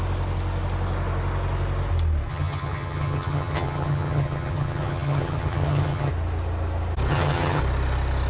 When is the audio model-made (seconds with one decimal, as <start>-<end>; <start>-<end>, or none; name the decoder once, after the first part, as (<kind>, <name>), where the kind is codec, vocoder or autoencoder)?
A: 2.3-6.1 (vocoder, HiFi-GAN); 7.1-7.6

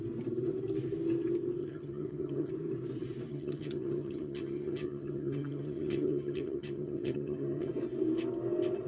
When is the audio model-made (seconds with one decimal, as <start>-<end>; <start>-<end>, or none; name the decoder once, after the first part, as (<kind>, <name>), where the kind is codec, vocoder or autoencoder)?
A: 1.6-2.5 (vocoder, HiFi-GAN); 3.3-7.7

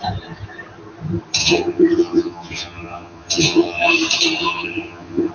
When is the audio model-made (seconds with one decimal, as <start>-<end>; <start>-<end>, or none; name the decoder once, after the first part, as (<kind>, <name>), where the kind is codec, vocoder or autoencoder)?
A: 1.4-3.9 (vocoder, HiFi-GAN); 4.4-5.3

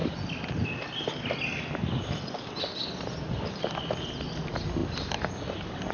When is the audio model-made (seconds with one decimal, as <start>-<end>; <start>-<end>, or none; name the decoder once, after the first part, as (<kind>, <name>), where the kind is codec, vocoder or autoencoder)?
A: none

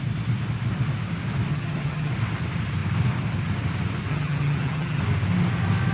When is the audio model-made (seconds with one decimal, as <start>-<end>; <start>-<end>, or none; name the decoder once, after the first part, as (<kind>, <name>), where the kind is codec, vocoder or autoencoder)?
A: 1.5-2.1 (vocoder, HiFi-GAN); 4.1-5.0